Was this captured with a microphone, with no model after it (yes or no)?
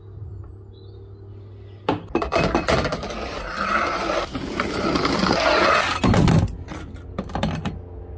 yes